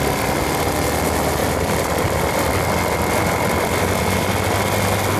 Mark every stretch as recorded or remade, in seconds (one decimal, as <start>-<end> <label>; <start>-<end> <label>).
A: 0.0-1.4 recorded; 1.4-4.5 remade; 4.5-5.2 recorded